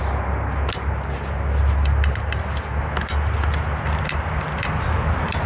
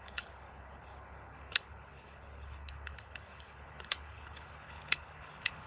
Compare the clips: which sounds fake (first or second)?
second